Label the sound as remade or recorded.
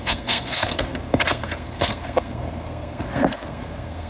remade